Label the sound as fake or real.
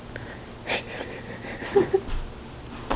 real